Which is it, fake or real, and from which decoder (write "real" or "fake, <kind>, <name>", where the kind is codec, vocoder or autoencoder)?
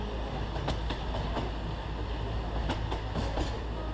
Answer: real